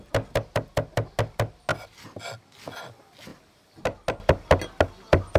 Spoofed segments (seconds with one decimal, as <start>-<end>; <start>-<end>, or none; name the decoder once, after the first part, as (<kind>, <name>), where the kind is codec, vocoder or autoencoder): 1.7-2.2 (vocoder, BigVGAN v2)